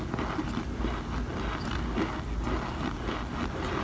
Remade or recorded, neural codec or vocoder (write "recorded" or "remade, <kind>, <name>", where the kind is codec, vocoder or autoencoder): recorded